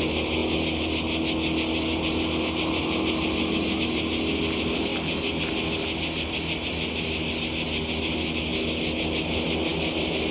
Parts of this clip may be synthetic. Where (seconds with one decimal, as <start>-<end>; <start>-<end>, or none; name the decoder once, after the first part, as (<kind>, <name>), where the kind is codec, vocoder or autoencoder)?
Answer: none